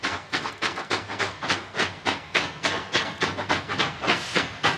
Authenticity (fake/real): fake